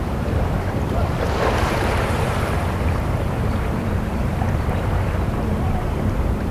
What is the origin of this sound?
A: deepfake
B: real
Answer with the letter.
A